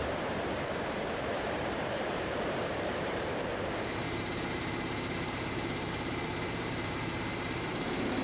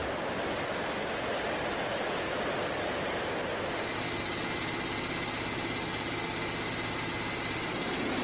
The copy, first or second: first